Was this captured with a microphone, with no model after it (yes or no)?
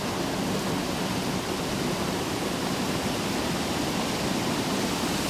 yes